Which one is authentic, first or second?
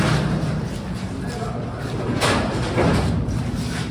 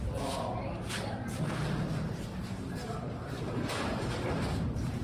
first